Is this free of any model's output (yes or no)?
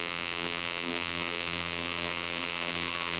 no